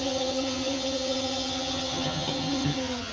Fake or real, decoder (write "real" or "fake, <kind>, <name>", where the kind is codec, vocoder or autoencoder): fake, vocoder, HiFi-GAN